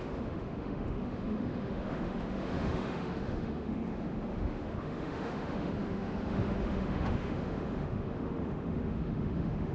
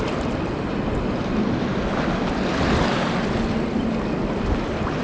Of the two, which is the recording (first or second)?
second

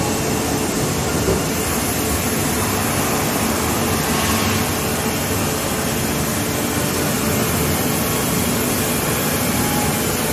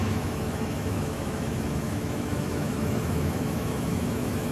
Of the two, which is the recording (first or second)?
first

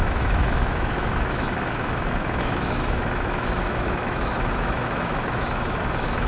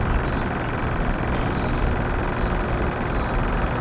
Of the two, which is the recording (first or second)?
second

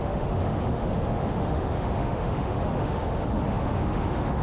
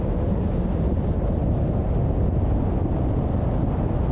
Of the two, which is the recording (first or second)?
second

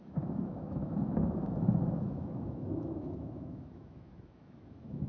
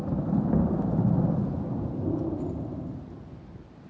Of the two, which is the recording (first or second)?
second